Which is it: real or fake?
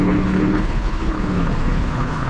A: fake